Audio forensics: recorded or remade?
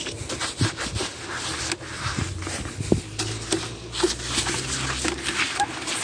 recorded